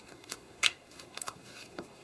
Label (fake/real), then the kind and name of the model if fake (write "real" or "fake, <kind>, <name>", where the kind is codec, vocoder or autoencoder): fake, codec, SNAC